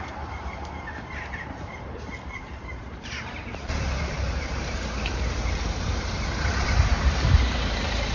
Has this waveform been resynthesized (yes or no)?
yes